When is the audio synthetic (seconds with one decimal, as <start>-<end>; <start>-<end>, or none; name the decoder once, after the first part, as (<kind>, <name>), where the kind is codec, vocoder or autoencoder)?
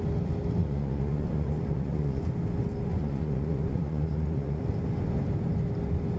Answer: 0.6-2.2 (vocoder, Vocos); 2.9-4.6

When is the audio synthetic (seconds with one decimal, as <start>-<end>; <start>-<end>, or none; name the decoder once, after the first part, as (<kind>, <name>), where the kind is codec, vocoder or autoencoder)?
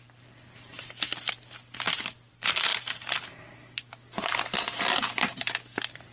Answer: 0.0-2.7 (vocoder, BigVGAN v2); 3.3-6.1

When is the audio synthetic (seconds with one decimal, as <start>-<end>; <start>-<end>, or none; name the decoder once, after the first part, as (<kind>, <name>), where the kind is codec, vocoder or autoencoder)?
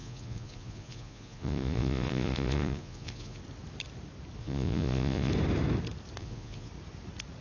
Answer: 0.0-3.4 (vocoder, Vocos); 4.4-5.3; 6.2-6.7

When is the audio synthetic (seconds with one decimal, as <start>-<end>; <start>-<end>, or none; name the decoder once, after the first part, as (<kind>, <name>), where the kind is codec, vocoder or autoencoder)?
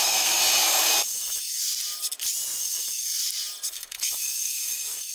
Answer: 0.0-0.4 (codec, SNAC); 1.0-1.6; 2.6-3.2; 3.7-5.1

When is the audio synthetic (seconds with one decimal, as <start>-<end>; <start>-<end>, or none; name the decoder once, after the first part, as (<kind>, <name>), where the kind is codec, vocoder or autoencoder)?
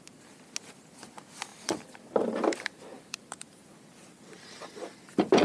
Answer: 1.5-4.7 (vocoder, BigVGAN v2)